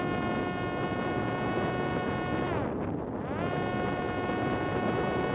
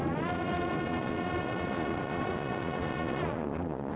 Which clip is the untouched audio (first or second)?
first